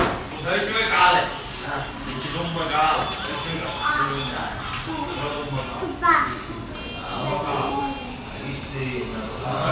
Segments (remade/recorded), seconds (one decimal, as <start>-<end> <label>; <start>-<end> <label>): 0.0-0.6 remade; 0.6-2.8 recorded; 2.8-4.6 remade; 4.6-7.5 recorded; 7.5-8.4 remade; 8.4-9.1 recorded; 9.1-9.7 remade